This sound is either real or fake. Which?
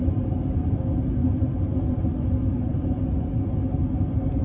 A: real